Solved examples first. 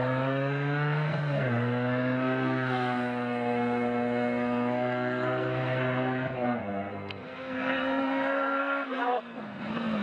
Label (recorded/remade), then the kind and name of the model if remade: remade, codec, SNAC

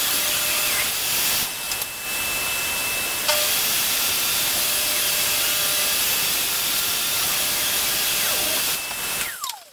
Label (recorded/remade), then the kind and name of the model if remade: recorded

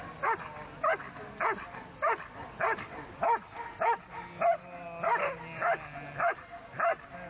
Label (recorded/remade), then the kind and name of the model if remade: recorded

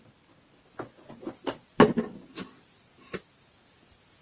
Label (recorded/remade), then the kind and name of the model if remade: recorded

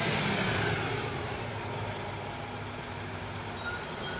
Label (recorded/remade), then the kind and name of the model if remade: recorded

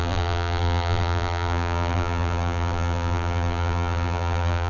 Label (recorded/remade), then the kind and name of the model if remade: remade, vocoder, BigVGAN v2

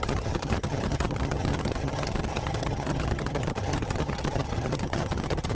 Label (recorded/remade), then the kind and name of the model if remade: remade, vocoder, HiFi-GAN